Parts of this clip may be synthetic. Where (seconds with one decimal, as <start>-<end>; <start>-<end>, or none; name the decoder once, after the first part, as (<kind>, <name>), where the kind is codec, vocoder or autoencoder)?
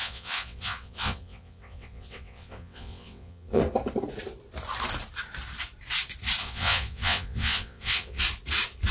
0.0-3.6 (vocoder, WaveNeXt); 6.4-8.2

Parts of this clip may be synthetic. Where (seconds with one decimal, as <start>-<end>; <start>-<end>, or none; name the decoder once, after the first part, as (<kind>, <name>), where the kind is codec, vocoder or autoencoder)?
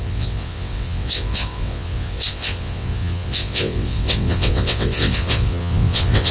0.0-6.3 (vocoder, WaveNeXt)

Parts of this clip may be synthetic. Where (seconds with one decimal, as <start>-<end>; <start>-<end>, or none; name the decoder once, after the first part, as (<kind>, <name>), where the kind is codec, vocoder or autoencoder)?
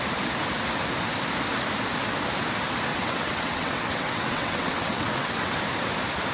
2.9-5.6 (vocoder, WaveNeXt)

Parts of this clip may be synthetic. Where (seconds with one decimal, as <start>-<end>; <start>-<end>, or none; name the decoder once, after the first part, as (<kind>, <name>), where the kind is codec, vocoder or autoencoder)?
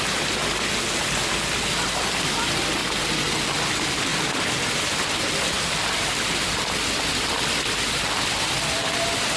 none